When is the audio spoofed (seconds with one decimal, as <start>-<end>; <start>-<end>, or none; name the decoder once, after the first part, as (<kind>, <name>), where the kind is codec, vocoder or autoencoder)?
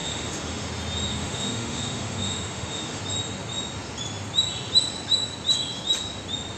0.0-0.7 (autoencoder, DAC-VAE); 1.1-3.0